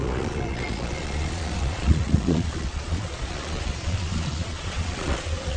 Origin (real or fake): fake